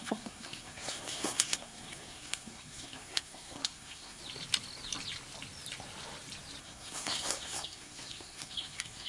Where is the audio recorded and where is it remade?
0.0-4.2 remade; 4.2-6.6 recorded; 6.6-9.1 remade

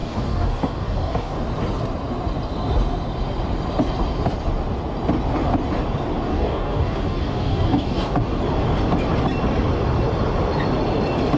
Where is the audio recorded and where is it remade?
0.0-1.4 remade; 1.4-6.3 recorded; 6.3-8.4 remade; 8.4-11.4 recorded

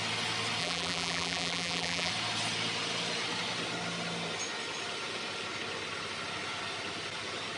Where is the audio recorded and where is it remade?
0.0-0.6 recorded; 0.6-2.1 remade; 2.1-7.6 recorded

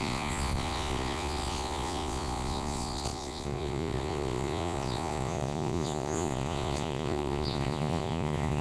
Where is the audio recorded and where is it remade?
0.0-8.6 remade

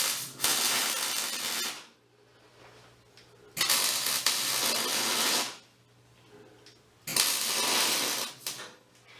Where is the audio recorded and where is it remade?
0.0-9.2 recorded

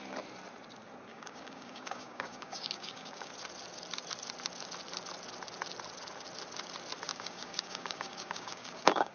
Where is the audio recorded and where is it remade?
0.0-1.1 recorded; 1.1-3.3 remade; 3.3-7.1 recorded; 7.1-9.1 remade

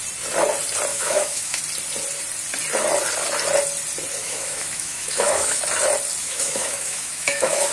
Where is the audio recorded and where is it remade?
0.0-0.9 recorded; 0.9-1.6 remade; 1.6-4.2 recorded; 4.2-5.6 remade; 5.6-6.2 recorded; 6.2-7.7 remade

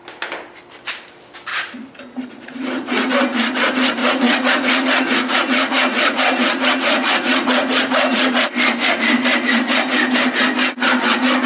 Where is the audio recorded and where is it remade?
0.0-1.5 recorded; 1.5-3.1 remade; 3.1-4.0 recorded; 4.0-8.5 remade; 8.5-11.5 recorded